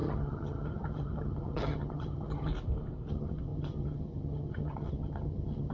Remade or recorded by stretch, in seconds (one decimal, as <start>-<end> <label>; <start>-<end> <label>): 0.0-2.5 remade; 2.5-3.1 recorded; 3.1-5.7 remade